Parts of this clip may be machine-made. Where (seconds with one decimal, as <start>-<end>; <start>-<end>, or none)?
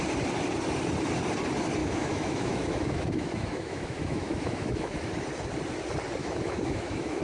1.8-5.1; 6.2-7.2